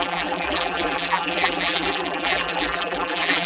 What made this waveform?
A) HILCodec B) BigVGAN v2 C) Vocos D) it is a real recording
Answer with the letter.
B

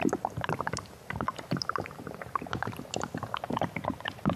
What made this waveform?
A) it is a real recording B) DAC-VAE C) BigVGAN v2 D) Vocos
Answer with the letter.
C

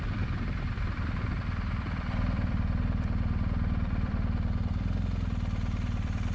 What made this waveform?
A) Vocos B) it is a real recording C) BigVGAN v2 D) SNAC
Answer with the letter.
C